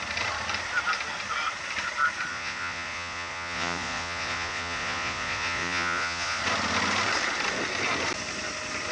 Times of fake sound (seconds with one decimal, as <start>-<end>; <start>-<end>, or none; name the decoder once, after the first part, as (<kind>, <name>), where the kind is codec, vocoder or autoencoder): 2.3-6.4 (vocoder, Vocos)